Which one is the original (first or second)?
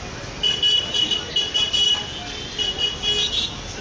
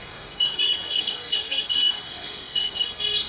first